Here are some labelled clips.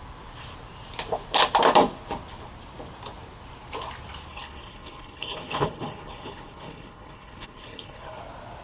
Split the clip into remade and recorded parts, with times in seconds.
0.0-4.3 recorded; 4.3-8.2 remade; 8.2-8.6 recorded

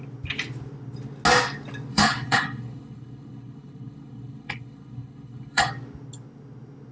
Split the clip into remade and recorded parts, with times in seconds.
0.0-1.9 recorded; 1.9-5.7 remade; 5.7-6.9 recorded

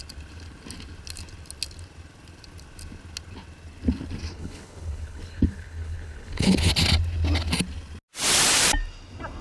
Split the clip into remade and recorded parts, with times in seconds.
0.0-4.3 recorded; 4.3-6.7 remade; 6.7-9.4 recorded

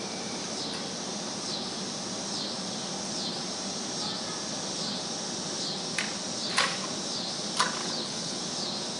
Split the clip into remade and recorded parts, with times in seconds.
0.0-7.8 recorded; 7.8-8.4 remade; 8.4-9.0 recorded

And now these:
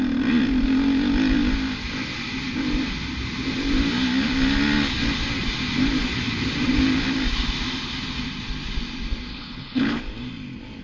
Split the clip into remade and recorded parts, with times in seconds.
0.0-9.3 recorded; 9.3-10.0 remade; 10.0-10.8 recorded